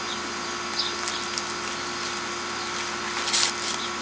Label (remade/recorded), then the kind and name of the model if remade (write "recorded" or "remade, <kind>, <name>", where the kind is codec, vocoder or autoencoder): recorded